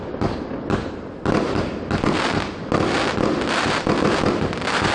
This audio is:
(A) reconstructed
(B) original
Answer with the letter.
B